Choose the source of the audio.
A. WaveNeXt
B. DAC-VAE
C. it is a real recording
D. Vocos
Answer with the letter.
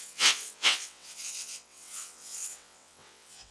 A